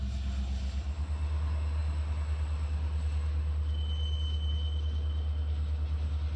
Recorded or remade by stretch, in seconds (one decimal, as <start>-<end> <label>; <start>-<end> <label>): 0.0-6.4 recorded